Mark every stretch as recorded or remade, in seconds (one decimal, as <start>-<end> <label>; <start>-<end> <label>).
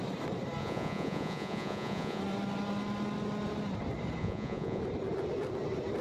0.0-0.6 recorded; 0.6-2.2 remade; 2.2-4.2 recorded; 4.2-4.8 remade; 4.8-6.0 recorded